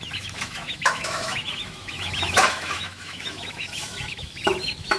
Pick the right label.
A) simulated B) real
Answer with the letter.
A